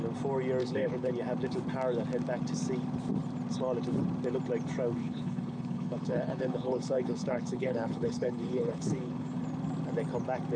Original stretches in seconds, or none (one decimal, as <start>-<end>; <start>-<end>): 0.0-0.6; 1.1-5.0; 9.4-10.6